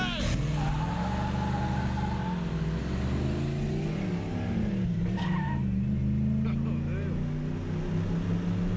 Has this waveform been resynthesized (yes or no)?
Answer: no